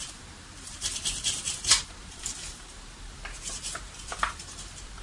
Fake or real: fake